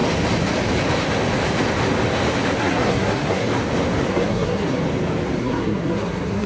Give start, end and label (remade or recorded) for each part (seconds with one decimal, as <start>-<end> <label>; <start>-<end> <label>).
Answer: 0.0-2.6 recorded; 2.6-3.5 remade; 3.5-4.1 recorded; 4.1-4.8 remade; 4.8-5.4 recorded; 5.4-6.5 remade